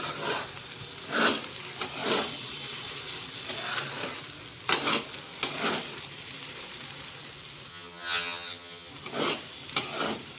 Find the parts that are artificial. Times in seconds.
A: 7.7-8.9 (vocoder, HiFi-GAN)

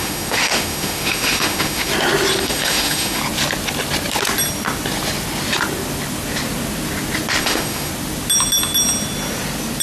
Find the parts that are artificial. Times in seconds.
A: 0.0-1.9 (autoencoder, DAC-VAE); 2.4-3.2; 7.4-7.9

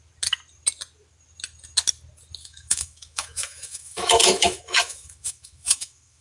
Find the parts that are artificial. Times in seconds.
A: 2.4-6.2 (autoencoder, DAC-VAE)

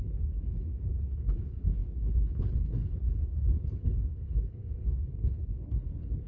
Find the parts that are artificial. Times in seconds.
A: 0.0-6.3 (codec, HILCodec)

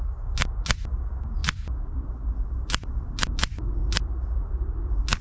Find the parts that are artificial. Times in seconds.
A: none